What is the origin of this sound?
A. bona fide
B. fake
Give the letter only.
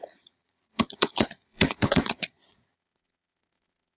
B